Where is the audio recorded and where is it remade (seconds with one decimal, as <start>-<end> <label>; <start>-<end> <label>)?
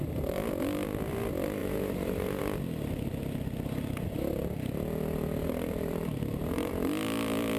0.0-1.6 recorded; 1.6-2.4 remade; 2.4-5.4 recorded; 5.4-6.7 remade; 6.7-7.6 recorded